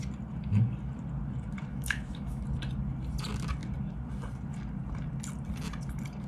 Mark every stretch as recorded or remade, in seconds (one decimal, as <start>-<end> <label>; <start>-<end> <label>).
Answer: 0.0-1.7 recorded; 1.7-2.4 remade; 2.4-6.3 recorded